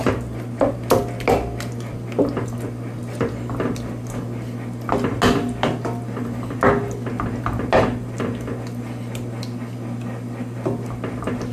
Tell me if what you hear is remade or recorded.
recorded